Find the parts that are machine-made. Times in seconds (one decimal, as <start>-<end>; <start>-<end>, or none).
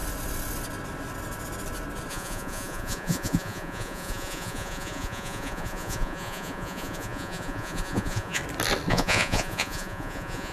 2.1-8.4; 8.9-10.5